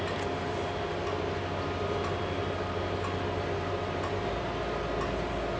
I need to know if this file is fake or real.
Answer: real